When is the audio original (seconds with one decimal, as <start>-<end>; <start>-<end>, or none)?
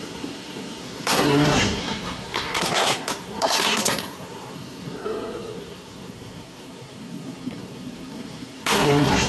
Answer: none